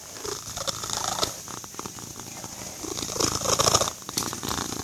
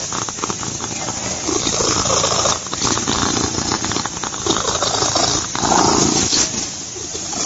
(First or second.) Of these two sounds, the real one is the second